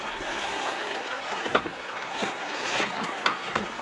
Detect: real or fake fake